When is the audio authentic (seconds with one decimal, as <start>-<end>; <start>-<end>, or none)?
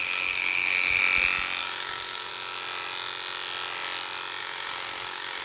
1.0-1.6; 2.3-4.4